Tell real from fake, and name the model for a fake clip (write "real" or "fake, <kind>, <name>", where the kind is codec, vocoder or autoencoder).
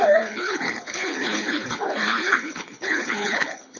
fake, codec, HILCodec